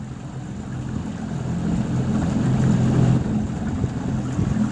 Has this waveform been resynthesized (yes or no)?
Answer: no